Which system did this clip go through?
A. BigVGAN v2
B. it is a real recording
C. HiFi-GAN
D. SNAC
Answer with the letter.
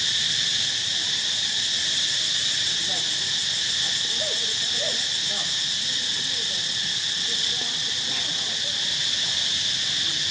B